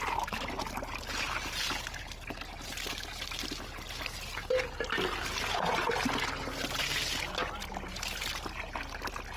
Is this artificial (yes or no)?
no